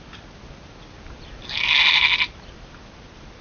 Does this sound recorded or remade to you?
recorded